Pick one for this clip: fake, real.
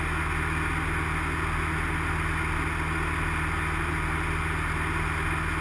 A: real